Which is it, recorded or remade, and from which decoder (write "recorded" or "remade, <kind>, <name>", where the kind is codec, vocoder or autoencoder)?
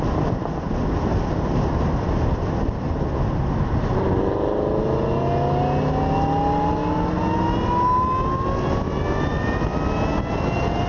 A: recorded